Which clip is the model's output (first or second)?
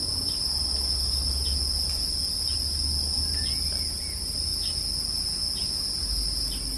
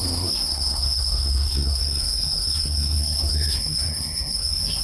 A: second